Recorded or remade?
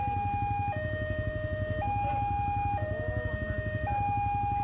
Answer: recorded